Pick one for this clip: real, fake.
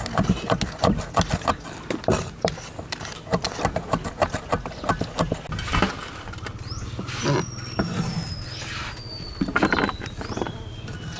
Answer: real